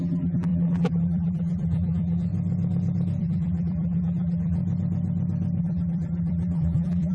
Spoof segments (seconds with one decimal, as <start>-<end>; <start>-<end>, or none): 0.0-2.3; 3.2-4.6; 5.6-7.1